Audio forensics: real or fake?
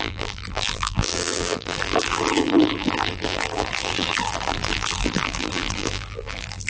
fake